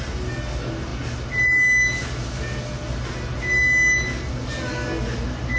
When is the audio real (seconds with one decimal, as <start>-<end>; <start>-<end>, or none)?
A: 0.0-5.6